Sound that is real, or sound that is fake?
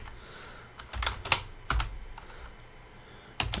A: real